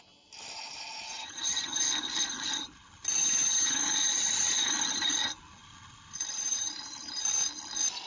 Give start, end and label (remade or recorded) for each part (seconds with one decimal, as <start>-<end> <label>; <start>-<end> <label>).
0.0-1.2 recorded; 1.2-1.8 remade; 1.8-3.2 recorded; 3.2-3.8 remade; 3.8-8.1 recorded